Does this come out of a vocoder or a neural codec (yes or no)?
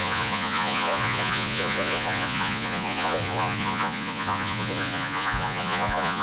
yes